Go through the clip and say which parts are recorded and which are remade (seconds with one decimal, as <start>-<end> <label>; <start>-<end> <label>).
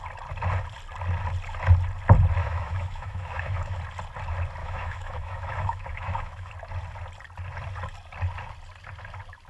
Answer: 0.0-2.4 recorded; 2.4-3.8 remade; 3.8-4.6 recorded; 4.6-6.5 remade; 6.5-9.5 recorded